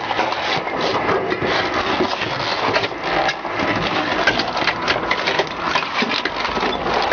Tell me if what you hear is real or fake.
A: real